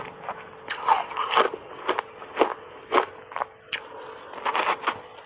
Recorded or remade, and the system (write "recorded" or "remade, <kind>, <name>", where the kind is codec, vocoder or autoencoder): recorded